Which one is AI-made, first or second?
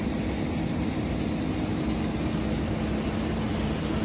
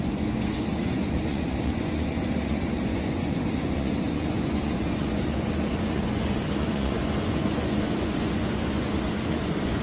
second